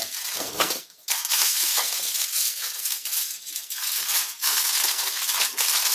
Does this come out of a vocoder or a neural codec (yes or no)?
yes